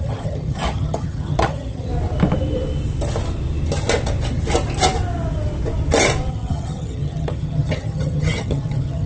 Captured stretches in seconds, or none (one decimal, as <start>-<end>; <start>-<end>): 1.9-6.3